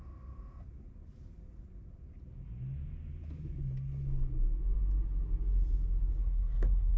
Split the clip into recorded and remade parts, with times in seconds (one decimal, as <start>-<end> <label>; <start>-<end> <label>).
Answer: 0.0-6.2 recorded; 6.2-7.0 remade